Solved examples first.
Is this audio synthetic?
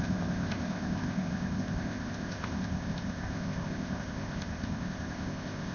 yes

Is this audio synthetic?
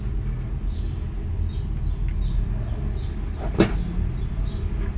no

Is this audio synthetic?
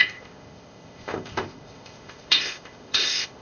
yes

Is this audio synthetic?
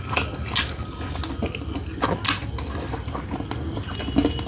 no